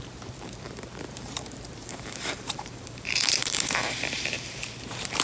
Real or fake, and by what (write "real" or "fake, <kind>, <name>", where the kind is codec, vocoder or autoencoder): fake, vocoder, BigVGAN v2